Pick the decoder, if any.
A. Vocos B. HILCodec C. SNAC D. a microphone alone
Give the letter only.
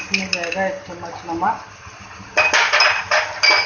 D